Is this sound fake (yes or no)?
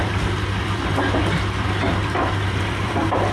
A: yes